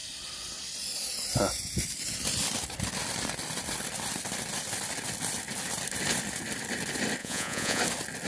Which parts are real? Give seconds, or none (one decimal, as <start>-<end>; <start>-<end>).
0.0-7.2; 7.8-8.3